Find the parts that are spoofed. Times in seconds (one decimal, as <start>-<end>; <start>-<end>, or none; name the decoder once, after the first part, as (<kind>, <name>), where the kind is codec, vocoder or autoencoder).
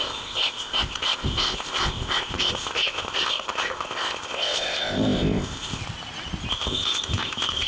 0.0-5.8 (codec, ZipCodec); 6.5-7.7